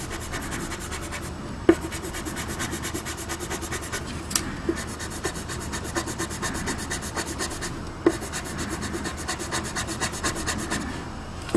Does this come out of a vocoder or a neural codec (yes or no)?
no